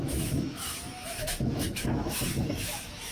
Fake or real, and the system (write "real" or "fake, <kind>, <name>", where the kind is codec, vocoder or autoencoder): fake, autoencoder, DAC-VAE